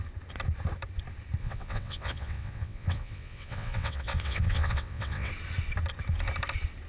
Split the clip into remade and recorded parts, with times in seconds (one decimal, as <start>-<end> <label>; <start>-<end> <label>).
0.0-1.4 recorded; 1.4-5.3 remade; 5.3-6.9 recorded